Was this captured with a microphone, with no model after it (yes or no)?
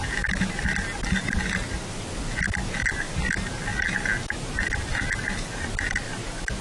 yes